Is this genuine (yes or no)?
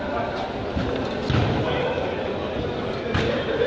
yes